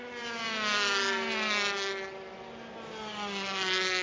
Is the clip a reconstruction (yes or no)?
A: no